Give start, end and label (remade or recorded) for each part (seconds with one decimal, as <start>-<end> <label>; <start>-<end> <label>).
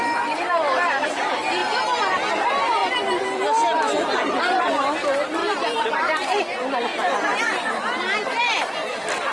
0.0-1.6 remade; 1.6-2.4 recorded; 2.4-2.8 remade; 2.8-4.4 recorded; 4.4-6.9 remade; 6.9-8.4 recorded; 8.4-9.3 remade